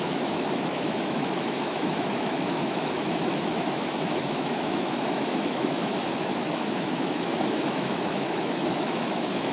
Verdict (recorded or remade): remade